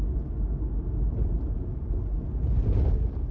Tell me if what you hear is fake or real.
real